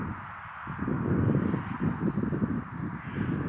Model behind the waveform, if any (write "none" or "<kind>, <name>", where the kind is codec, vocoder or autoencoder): none